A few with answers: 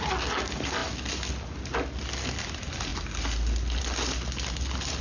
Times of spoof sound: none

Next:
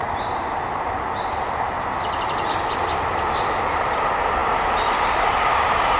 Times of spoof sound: none

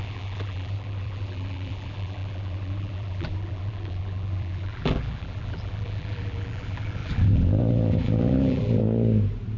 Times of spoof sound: 0.0-8.8 (vocoder, BigVGAN v2)

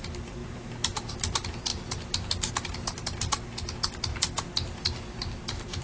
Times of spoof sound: 0.4-1.1 (vocoder, BigVGAN v2); 1.7-2.3

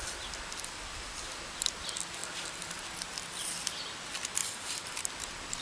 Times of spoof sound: 2.2-2.8 (vocoder, BigVGAN v2); 4.4-5.1

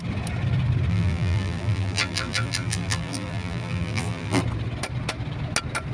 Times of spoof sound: 0.9-4.4 (vocoder, BigVGAN v2)

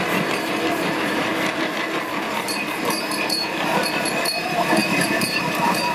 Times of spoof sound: 0.0-1.3 (vocoder, BigVGAN v2); 2.2-5.9